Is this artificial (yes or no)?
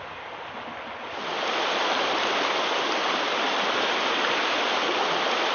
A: yes